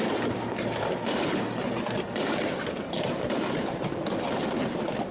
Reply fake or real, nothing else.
real